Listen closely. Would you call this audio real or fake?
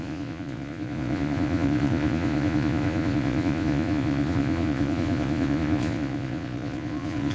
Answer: fake